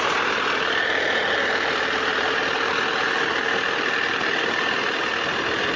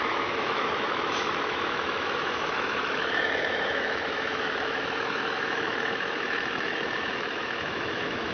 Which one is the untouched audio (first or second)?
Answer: first